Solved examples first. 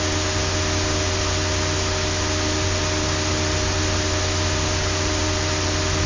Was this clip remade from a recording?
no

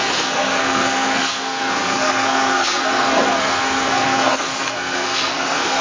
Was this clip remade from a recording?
yes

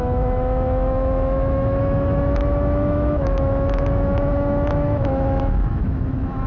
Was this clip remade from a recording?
yes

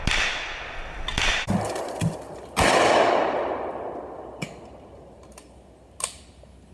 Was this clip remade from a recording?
no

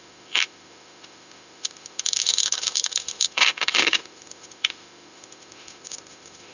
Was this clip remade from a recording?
yes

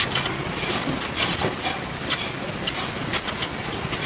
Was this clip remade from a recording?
no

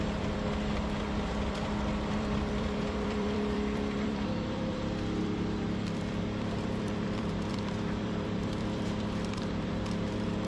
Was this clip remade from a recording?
yes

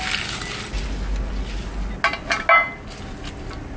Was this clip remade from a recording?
no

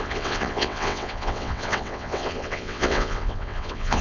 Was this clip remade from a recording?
yes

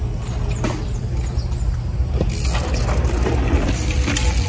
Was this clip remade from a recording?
no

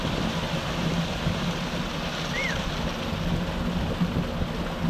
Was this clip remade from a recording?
no